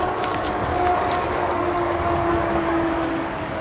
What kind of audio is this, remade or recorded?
remade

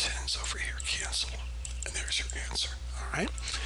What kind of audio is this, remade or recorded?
remade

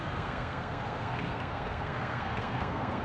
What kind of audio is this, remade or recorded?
remade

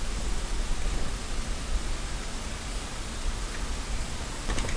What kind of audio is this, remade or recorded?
recorded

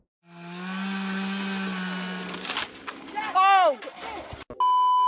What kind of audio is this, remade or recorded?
recorded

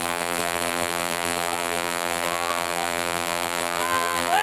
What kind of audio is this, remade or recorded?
remade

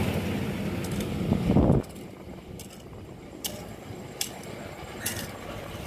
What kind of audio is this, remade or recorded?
recorded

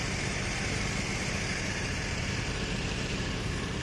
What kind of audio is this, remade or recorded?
remade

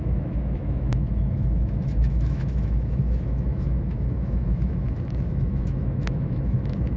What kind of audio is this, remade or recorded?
remade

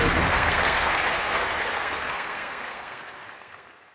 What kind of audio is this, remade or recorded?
remade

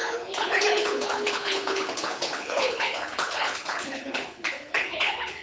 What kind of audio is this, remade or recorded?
remade